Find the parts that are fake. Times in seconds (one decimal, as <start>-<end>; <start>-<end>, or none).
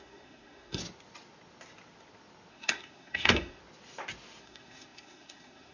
0.0-0.8; 2.5-3.6; 4.4-5.7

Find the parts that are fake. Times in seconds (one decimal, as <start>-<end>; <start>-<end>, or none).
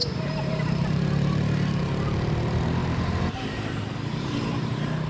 0.0-1.8; 2.8-5.1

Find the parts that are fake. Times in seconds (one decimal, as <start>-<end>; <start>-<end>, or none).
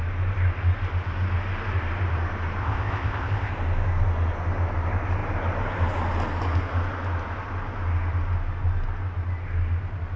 2.6-3.5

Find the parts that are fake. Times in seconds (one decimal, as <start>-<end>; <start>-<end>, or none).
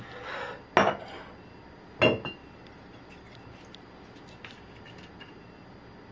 none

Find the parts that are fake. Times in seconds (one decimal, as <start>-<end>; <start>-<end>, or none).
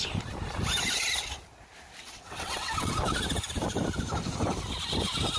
2.0-2.9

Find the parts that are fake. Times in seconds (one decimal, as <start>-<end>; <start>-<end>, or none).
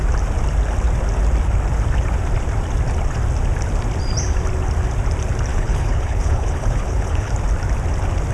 5.5-7.3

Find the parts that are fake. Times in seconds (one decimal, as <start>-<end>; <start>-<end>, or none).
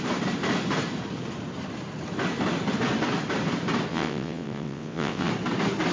3.9-5.3